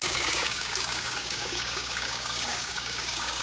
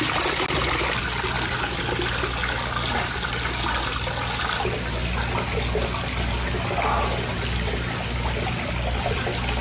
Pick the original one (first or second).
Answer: second